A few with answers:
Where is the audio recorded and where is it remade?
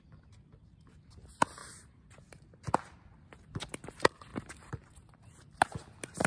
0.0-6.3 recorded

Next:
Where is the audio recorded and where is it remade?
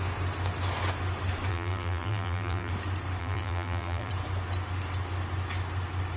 0.0-1.5 recorded; 1.5-2.7 remade; 2.7-3.2 recorded; 3.2-4.1 remade; 4.1-6.2 recorded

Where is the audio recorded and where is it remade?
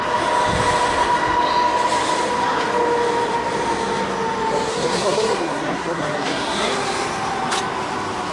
0.0-4.7 recorded; 4.7-6.7 remade; 6.7-8.3 recorded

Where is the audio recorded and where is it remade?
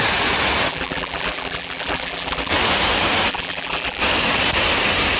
0.0-0.7 recorded; 0.7-2.5 remade; 2.5-3.3 recorded; 3.3-4.0 remade; 4.0-5.2 recorded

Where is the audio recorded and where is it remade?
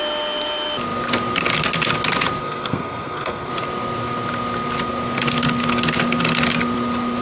0.0-2.4 recorded; 2.4-3.5 remade; 3.5-7.2 recorded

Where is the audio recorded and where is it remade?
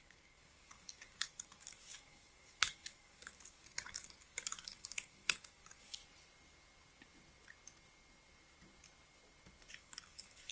0.0-6.0 remade; 6.0-9.7 recorded; 9.7-10.5 remade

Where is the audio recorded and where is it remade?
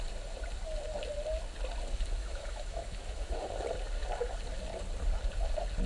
0.0-2.2 recorded; 2.2-3.5 remade; 3.5-5.9 recorded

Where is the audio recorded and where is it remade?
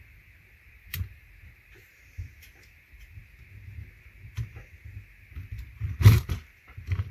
0.0-3.2 remade; 3.2-5.7 recorded; 5.7-7.1 remade